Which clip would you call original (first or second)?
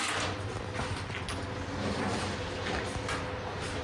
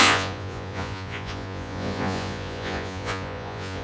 first